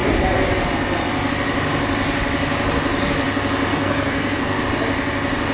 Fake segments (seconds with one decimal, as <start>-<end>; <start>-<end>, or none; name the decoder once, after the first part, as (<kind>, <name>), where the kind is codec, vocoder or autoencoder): 3.7-4.6 (codec, SNAC)

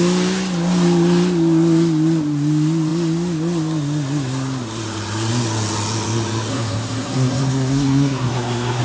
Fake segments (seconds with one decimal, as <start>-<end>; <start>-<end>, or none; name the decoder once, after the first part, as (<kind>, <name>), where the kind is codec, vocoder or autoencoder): 6.5-8.8 (codec, SNAC)

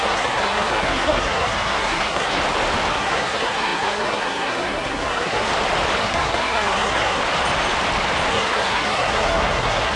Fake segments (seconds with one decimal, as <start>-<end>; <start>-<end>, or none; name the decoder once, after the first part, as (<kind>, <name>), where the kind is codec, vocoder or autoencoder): 0.0-2.4 (codec, SNAC); 2.9-5.5; 6.0-7.2; 8.3-10.0

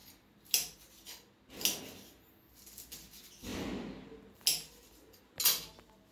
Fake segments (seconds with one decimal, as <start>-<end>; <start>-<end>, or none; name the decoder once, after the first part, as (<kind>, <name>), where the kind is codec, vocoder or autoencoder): none

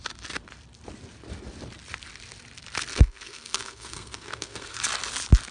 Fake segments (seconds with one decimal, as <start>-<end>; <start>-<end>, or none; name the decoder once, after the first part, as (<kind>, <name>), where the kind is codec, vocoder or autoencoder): 2.9-4.8 (codec, SNAC)

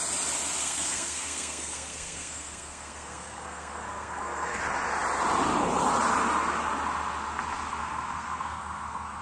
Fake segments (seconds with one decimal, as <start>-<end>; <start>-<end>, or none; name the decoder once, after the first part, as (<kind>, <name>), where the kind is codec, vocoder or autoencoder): 0.6-4.6 (codec, SNAC); 7.8-9.2

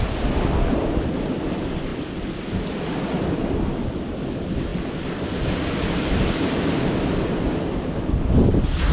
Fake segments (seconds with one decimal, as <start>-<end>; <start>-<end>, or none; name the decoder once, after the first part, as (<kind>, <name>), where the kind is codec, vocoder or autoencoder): none

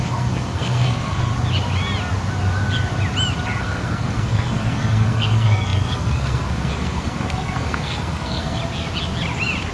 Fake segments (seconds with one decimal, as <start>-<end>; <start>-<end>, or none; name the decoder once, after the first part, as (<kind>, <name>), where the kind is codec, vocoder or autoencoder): 0.0-1.3 (codec, SNAC); 3.6-8.6